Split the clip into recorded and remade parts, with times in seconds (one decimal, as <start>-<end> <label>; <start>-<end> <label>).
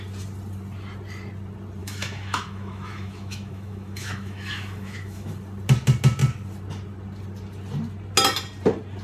0.0-1.8 recorded; 1.8-5.3 remade; 5.3-9.0 recorded